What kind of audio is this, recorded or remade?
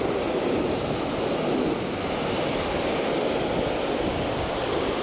recorded